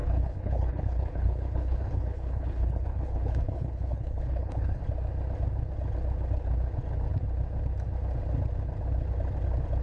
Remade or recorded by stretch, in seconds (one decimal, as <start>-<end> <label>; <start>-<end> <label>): 0.0-4.8 remade; 4.8-9.8 recorded